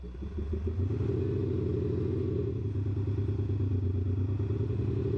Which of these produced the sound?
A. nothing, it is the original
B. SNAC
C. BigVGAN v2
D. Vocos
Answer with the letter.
A